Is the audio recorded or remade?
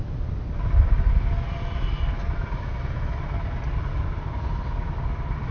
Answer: recorded